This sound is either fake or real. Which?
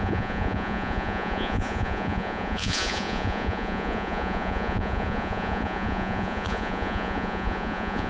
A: fake